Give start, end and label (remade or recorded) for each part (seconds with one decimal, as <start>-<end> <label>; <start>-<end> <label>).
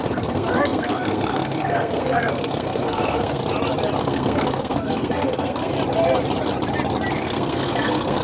0.0-3.4 remade; 3.4-4.0 recorded; 4.0-5.7 remade; 5.7-7.1 recorded; 7.1-8.2 remade